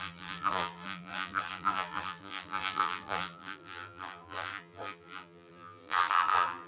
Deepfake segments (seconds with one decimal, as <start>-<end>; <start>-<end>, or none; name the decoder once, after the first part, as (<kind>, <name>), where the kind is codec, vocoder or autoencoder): 0.0-6.7 (vocoder, BigVGAN v2)